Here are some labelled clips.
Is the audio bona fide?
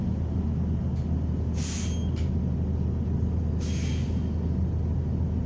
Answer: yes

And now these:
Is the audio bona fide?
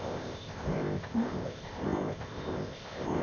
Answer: no